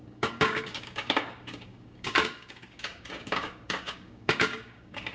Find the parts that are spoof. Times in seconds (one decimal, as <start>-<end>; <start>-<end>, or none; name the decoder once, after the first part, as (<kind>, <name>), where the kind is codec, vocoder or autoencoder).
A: 0.0-5.1 (codec, DAC)